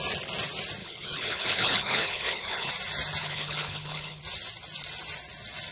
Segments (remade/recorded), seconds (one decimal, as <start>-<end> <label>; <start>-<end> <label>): 0.0-0.8 recorded; 0.8-2.7 remade; 2.7-3.2 recorded; 3.2-4.2 remade; 4.2-5.7 recorded